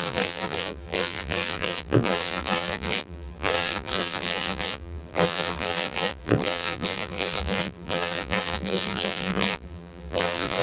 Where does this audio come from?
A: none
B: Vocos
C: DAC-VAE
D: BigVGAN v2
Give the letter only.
D